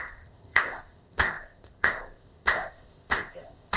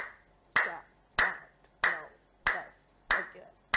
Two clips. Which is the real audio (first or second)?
second